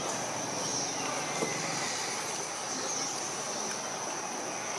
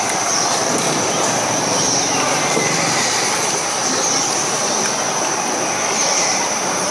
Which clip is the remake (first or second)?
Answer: second